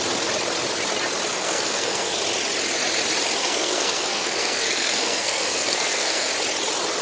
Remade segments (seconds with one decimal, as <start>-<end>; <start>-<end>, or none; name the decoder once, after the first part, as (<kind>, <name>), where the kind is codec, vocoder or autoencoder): 1.3-2.2 (codec, SNAC); 3.4-6.3